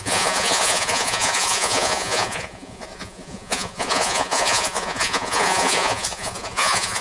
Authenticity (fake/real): fake